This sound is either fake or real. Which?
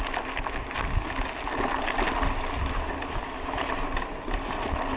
real